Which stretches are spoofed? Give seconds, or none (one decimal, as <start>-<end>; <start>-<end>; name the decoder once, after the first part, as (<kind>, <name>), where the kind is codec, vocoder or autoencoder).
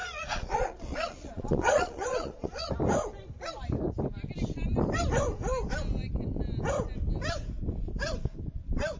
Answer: 0.0-2.7 (vocoder, Vocos)